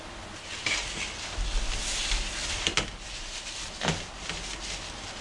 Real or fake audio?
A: real